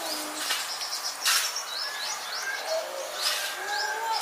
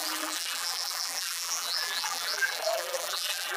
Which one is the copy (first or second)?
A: second